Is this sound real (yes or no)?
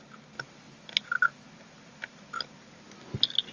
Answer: yes